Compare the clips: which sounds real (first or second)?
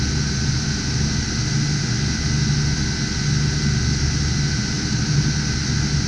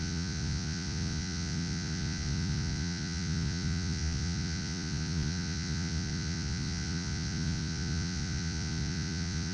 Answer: first